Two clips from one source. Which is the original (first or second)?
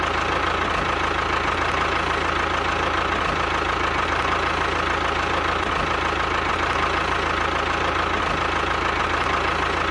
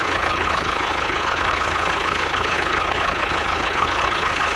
first